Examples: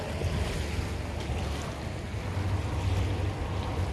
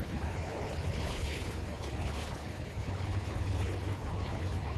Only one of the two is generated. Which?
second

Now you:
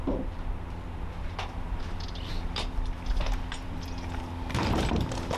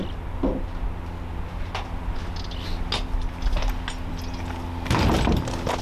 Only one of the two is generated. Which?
first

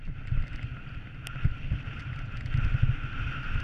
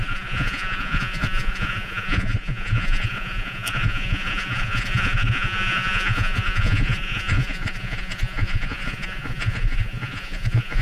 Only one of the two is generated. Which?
second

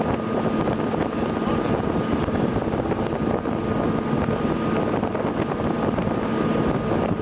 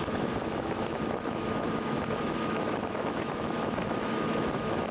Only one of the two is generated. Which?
second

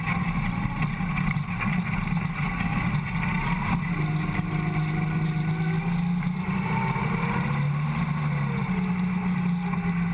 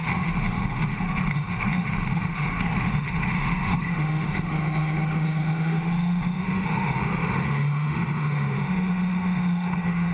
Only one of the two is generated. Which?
second